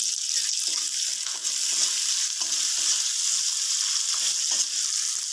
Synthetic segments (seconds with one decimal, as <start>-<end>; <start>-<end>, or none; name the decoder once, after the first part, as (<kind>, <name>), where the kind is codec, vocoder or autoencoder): none